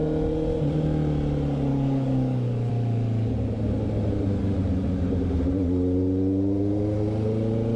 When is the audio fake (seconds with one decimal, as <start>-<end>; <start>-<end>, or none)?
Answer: 1.7-2.7